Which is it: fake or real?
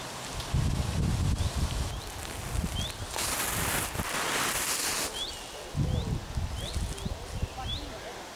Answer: real